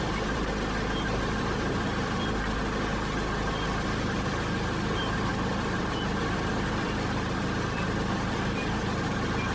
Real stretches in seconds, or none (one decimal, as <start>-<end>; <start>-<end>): 5.3-5.8